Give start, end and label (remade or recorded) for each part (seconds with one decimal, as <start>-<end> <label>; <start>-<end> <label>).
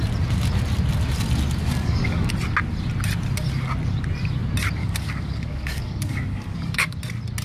0.0-1.6 recorded; 1.6-2.3 remade; 2.3-4.8 recorded; 4.8-7.0 remade; 7.0-7.4 recorded